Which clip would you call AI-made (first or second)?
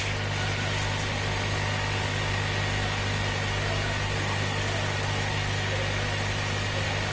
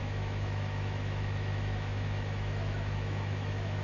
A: second